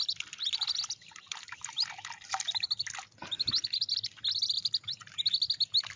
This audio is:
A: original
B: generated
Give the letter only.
A